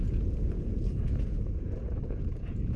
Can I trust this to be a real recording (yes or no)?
no